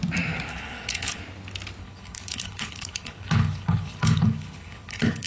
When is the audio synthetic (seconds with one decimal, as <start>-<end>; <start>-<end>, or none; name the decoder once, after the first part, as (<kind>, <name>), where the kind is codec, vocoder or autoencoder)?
0.5-1.2 (codec, HILCodec); 1.8-5.3